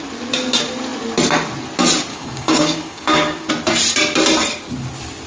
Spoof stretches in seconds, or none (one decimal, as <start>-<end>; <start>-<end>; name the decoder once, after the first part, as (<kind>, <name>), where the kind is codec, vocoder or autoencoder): 2.1-3.5 (codec, DAC)